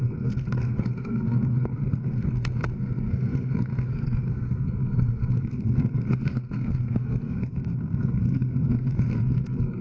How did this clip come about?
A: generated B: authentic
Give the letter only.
A